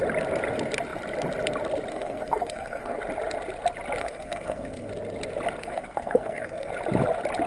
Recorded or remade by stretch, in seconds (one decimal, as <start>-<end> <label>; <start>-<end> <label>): 0.0-1.9 recorded; 1.9-3.0 remade; 3.0-4.0 recorded; 4.0-4.9 remade; 4.9-5.6 recorded; 5.6-6.7 remade; 6.7-7.5 recorded